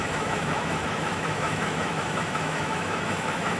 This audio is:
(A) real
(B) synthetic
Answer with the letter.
B